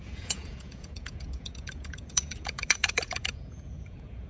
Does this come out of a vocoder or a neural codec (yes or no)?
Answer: yes